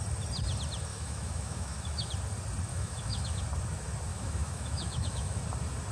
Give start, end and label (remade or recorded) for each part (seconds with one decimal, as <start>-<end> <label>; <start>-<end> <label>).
0.0-0.9 recorded; 0.9-2.1 remade; 2.1-2.7 recorded; 2.7-3.4 remade; 3.4-4.1 recorded; 4.1-5.4 remade; 5.4-5.9 recorded